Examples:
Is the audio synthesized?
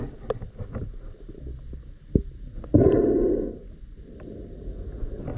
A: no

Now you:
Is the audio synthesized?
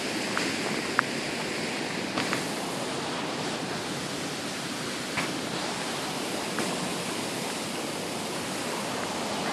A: no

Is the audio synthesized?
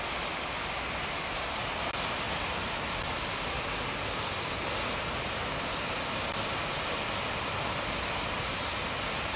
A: no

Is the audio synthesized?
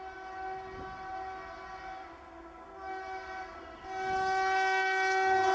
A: no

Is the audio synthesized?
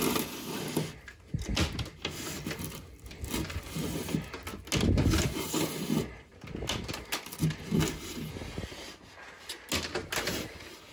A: no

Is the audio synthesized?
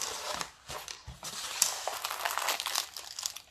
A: no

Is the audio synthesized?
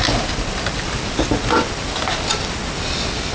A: no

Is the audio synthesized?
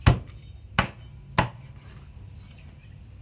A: no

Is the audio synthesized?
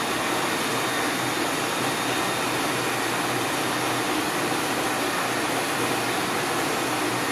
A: no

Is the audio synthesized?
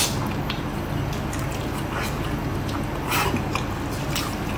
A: no